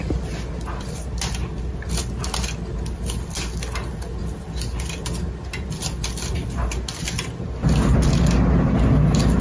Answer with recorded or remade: recorded